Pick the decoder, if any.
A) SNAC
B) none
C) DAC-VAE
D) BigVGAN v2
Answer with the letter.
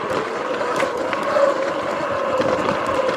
B